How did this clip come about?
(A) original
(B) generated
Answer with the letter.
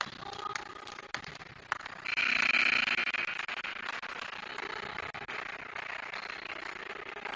A